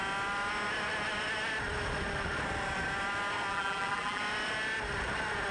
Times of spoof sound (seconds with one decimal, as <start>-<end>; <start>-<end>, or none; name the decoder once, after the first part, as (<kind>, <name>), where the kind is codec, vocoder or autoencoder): 3.5-4.2 (vocoder, BigVGAN v2)